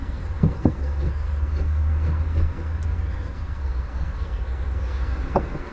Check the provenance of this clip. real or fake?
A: fake